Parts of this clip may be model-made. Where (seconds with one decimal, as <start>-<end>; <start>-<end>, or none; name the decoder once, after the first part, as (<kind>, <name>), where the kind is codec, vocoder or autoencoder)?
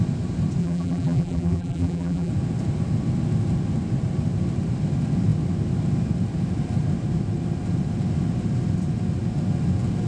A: 0.6-2.3 (vocoder, BigVGAN v2)